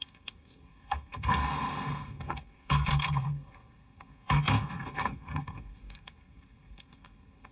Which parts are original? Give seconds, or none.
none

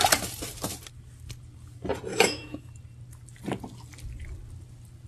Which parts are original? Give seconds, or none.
0.0-2.1; 2.7-5.1

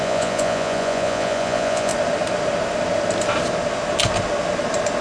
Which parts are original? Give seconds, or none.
1.9-5.0

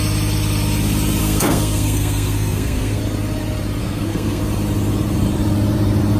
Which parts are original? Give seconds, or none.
0.0-1.2; 3.0-3.8; 4.4-6.2

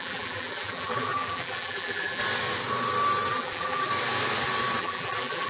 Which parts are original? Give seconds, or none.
2.2-3.3; 3.9-4.8

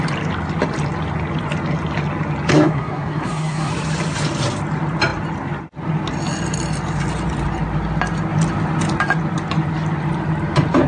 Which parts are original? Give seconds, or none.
0.0-2.5; 3.7-10.9

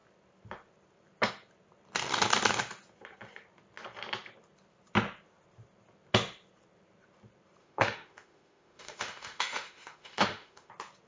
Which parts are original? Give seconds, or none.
0.0-7.6; 10.7-11.1

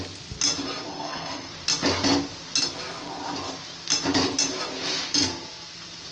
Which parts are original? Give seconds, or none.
0.0-0.9; 1.5-6.1